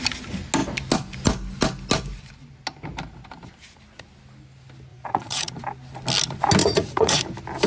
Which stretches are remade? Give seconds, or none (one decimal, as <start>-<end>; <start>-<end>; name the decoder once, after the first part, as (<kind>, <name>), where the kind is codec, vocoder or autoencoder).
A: 4.9-5.5 (vocoder, Vocos); 6.6-7.2